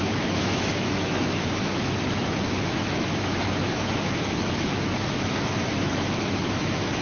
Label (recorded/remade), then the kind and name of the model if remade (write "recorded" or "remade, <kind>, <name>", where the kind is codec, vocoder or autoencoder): remade, autoencoder, DAC-VAE